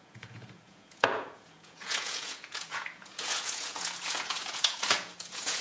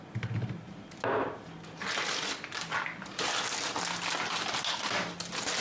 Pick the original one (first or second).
second